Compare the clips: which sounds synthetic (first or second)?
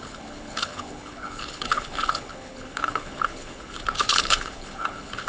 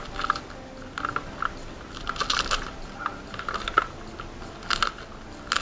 first